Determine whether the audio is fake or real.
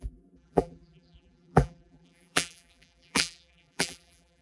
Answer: fake